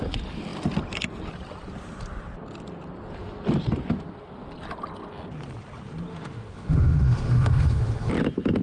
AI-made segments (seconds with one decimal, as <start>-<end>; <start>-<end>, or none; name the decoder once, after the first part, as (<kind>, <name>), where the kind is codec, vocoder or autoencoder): 6.1-8.1 (autoencoder, DAC-VAE)